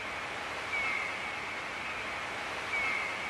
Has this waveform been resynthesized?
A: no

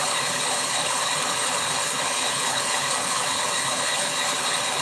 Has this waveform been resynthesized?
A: yes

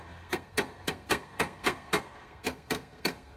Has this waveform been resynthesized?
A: yes